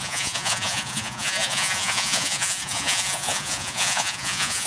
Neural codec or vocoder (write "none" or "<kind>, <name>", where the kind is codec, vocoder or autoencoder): vocoder, Vocos